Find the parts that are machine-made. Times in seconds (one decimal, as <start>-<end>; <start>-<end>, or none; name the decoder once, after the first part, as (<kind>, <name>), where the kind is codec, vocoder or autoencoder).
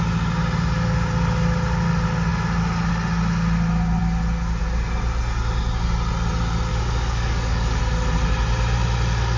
6.7-7.8 (codec, DAC)